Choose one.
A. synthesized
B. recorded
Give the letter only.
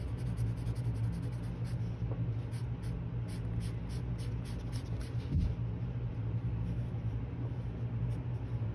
B